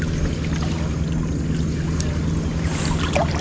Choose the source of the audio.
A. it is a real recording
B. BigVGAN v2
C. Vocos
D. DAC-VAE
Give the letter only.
A